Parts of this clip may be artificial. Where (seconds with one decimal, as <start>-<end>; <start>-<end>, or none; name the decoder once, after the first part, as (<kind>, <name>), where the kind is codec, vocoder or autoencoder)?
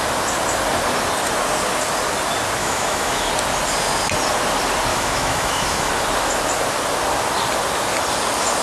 2.6-3.3 (autoencoder, DAC-VAE); 4.9-5.9